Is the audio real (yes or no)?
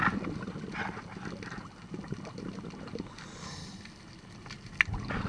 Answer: yes